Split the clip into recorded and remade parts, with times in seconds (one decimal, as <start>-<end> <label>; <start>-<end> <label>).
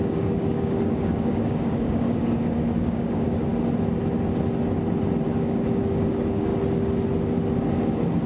0.0-3.5 remade; 3.5-5.4 recorded; 5.4-6.5 remade; 6.5-7.7 recorded; 7.7-8.3 remade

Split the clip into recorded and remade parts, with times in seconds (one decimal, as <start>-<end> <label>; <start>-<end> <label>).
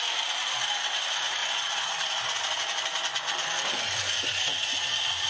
0.0-5.3 recorded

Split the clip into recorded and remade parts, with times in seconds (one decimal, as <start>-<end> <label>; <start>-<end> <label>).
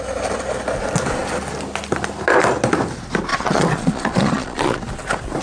0.0-3.3 recorded; 3.3-4.8 remade; 4.8-5.4 recorded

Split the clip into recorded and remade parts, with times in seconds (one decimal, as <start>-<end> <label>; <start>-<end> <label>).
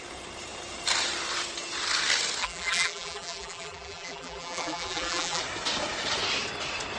0.0-2.4 recorded; 2.4-5.4 remade; 5.4-7.0 recorded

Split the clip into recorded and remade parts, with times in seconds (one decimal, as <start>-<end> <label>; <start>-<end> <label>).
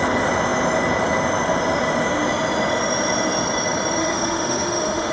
0.0-4.0 recorded; 4.0-5.1 remade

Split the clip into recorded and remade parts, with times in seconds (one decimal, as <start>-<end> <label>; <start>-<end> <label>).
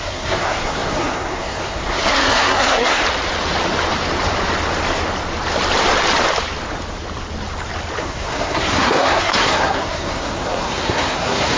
0.0-3.0 remade; 3.0-8.0 recorded; 8.0-11.6 remade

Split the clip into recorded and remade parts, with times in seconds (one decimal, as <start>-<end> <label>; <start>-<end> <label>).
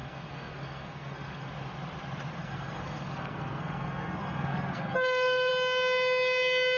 0.0-1.5 remade; 1.5-2.4 recorded; 2.4-5.5 remade; 5.5-6.8 recorded